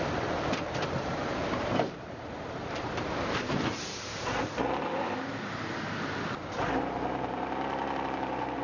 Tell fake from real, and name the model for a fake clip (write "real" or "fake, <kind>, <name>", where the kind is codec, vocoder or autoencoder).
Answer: fake, vocoder, BigVGAN v2